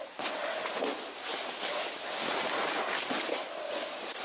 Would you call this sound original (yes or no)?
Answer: yes